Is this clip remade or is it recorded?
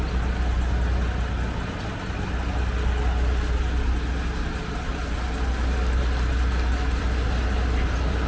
recorded